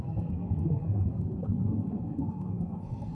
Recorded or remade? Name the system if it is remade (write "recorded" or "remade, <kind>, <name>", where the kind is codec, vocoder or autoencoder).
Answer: remade, codec, SNAC